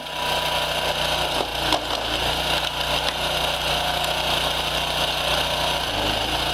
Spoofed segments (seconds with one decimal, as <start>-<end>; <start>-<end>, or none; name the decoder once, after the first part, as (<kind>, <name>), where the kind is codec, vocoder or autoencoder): none